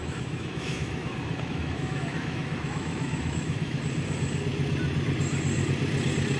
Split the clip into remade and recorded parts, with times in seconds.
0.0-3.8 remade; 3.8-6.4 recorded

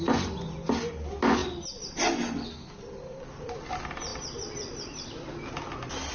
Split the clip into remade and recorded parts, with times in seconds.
0.0-4.1 recorded; 4.1-5.3 remade; 5.3-6.1 recorded

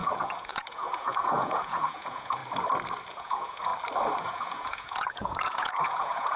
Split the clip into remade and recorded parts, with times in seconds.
0.0-2.4 remade; 2.4-3.1 recorded; 3.1-3.7 remade; 3.7-4.2 recorded; 4.2-6.4 remade

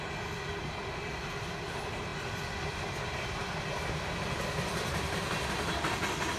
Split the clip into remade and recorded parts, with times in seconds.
0.0-6.4 recorded

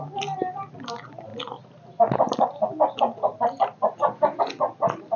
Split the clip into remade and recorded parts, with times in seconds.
0.0-5.2 recorded

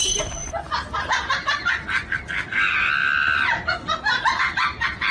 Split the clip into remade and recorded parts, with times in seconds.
0.0-5.1 recorded

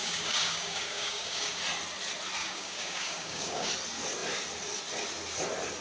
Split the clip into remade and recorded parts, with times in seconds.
0.0-1.6 remade; 1.6-2.4 recorded; 2.4-3.7 remade; 3.7-5.8 recorded